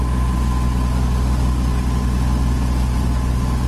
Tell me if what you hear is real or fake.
real